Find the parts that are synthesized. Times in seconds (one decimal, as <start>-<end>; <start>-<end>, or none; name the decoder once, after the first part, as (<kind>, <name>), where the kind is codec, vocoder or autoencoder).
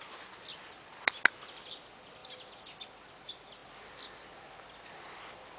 none